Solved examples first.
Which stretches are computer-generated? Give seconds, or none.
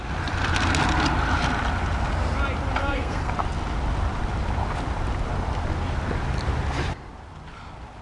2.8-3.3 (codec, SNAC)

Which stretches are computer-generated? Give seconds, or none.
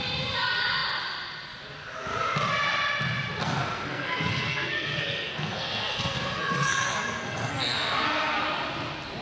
3.4-8.4 (codec, SNAC)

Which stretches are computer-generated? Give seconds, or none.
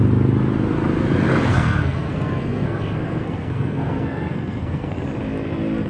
1.5-5.0 (codec, SNAC)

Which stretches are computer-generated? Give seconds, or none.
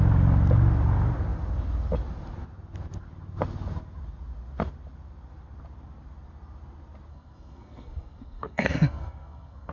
7.1-9.7 (codec, SNAC)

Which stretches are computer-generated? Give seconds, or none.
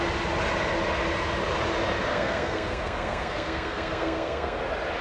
2.1-4.6 (codec, SNAC)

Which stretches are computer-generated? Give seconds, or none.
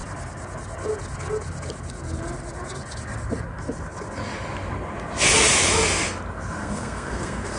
6.6-7.6 (codec, SNAC)